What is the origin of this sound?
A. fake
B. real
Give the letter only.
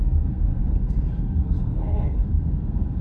A